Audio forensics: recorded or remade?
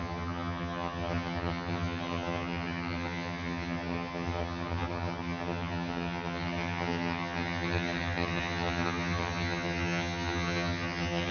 remade